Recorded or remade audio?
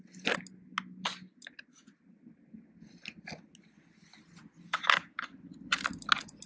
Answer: recorded